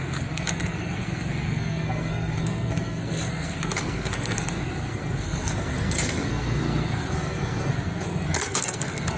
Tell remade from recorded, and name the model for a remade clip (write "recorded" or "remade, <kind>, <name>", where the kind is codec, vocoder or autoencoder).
remade, codec, SNAC